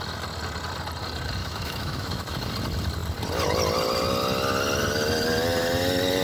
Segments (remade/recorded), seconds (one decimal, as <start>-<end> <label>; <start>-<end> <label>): 0.0-1.4 recorded; 1.4-2.5 remade; 2.5-6.2 recorded

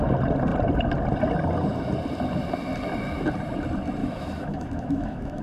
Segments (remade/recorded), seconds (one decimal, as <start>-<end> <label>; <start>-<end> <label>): 0.0-4.0 recorded; 4.0-5.4 remade

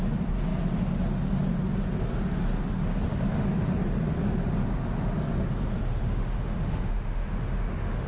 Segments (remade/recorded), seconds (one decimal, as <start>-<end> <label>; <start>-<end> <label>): 0.0-5.9 recorded; 5.9-8.1 remade

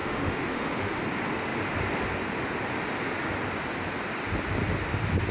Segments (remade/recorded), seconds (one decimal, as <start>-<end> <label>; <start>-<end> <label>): 0.0-1.0 remade; 1.0-5.3 recorded

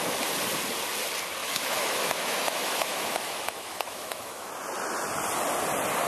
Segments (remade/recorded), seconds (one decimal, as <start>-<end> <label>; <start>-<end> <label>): 0.0-1.4 recorded; 1.4-4.5 remade; 4.5-6.1 recorded

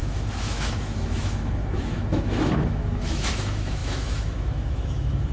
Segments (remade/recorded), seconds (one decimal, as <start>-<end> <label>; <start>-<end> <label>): 0.0-5.3 remade

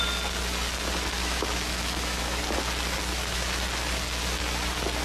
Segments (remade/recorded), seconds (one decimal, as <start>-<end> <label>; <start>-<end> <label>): 0.0-1.2 recorded; 1.2-2.4 remade; 2.4-3.1 recorded; 3.1-3.6 remade; 3.6-5.0 recorded

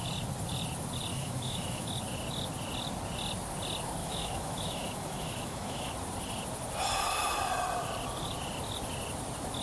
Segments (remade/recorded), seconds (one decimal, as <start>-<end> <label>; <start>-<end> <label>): 0.0-1.1 recorded; 1.1-1.9 remade; 1.9-4.0 recorded; 4.0-5.9 remade; 5.9-9.6 recorded